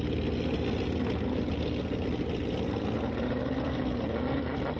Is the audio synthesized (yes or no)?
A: no